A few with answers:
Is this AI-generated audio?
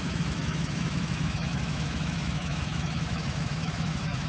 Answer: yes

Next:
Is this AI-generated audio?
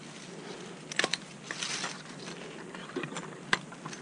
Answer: no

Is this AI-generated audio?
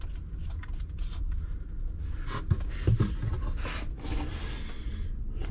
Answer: no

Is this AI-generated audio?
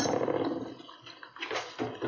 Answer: no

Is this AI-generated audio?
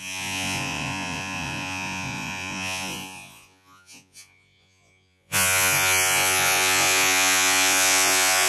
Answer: yes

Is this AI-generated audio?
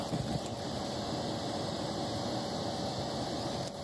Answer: no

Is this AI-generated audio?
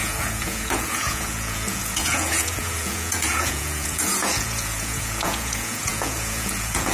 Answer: yes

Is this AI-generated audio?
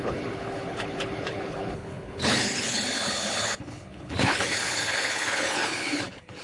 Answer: yes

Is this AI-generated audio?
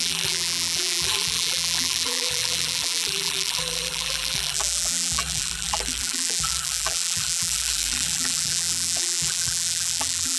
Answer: yes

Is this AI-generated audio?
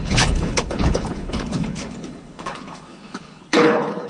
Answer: yes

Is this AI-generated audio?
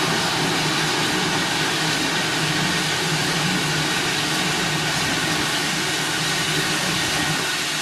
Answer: no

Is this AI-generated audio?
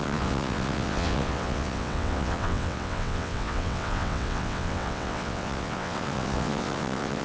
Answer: yes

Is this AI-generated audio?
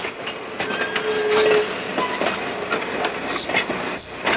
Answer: no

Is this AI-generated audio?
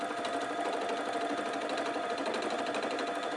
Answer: no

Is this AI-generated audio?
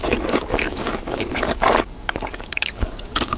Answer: yes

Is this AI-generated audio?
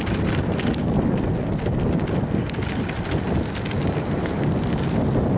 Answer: no